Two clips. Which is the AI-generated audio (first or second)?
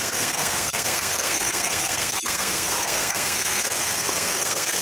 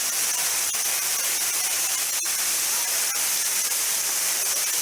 first